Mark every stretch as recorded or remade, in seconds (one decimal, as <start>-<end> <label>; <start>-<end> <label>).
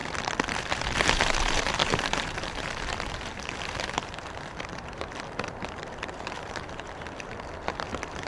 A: 0.0-0.6 recorded; 0.6-8.3 remade